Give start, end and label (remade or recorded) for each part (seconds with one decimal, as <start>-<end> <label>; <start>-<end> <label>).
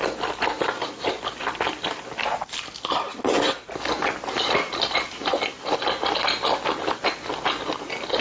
0.0-8.2 recorded